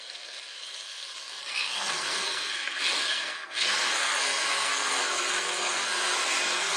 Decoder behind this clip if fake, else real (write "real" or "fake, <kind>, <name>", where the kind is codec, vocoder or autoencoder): fake, codec, SNAC